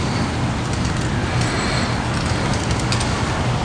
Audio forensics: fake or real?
real